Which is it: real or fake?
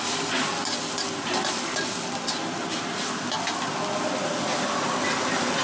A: real